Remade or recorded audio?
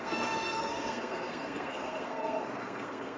remade